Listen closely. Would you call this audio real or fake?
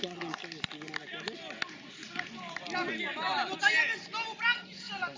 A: real